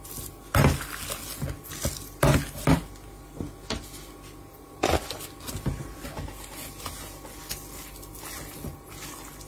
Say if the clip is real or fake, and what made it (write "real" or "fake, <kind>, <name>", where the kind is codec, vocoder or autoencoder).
real